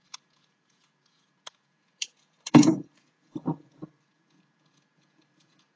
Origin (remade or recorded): remade